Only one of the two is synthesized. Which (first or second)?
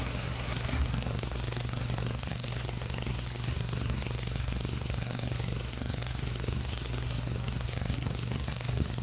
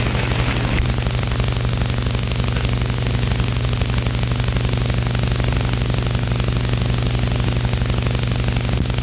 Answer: first